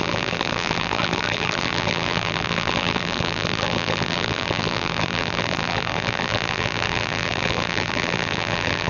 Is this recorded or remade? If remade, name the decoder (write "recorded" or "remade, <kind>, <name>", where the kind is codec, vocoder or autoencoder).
remade, vocoder, BigVGAN v2